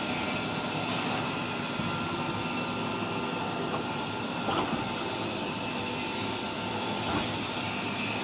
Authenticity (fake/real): real